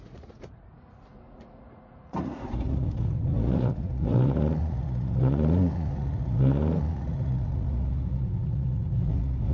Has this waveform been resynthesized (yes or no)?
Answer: yes